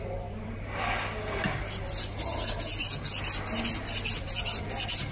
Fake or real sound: real